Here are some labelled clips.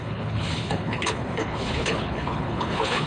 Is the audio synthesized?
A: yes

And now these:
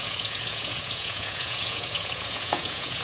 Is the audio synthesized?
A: yes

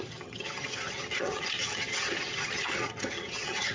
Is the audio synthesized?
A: yes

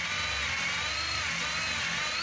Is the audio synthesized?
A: no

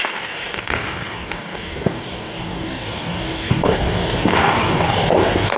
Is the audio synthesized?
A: yes